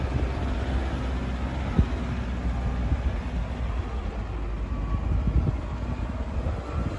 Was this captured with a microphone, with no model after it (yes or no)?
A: yes